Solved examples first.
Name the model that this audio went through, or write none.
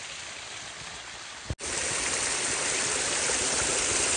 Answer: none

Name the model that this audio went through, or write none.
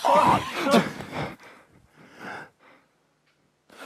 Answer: vocoder, BigVGAN v2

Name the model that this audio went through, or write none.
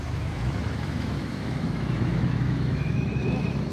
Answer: autoencoder, DAC-VAE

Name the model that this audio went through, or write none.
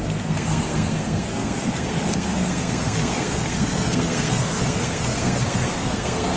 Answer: codec, SNAC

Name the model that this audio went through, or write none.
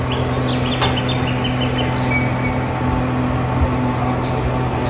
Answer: none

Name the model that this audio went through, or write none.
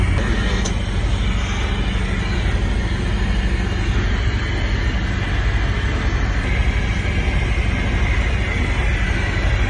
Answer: none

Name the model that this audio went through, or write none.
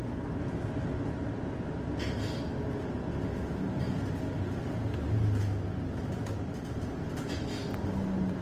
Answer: none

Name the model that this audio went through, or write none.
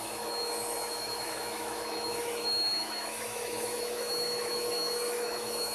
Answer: autoencoder, DAC-VAE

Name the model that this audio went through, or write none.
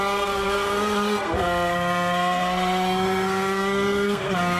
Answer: codec, SNAC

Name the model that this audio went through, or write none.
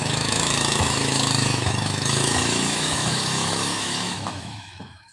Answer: autoencoder, DAC-VAE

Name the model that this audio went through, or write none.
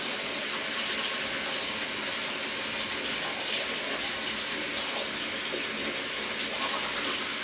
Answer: none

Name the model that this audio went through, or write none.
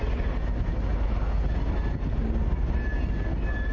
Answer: none